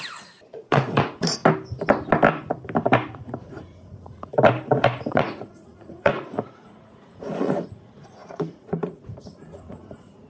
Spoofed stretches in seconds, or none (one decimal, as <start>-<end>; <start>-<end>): 0.0-1.4; 3.5-4.3; 5.1-10.3